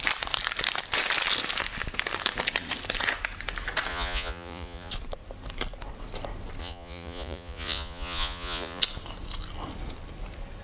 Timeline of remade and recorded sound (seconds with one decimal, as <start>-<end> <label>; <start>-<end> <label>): 0.0-3.9 recorded; 3.9-4.9 remade; 4.9-6.6 recorded; 6.6-8.8 remade; 8.8-10.6 recorded